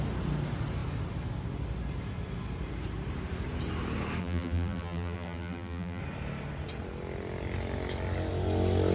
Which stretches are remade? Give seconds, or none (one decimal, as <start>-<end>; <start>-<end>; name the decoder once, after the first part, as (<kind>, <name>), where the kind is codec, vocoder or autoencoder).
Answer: 4.2-6.0 (vocoder, BigVGAN v2)